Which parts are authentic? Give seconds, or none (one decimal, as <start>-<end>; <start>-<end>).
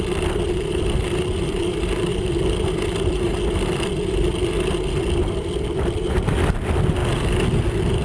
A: 0.0-8.0